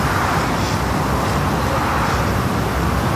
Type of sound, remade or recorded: recorded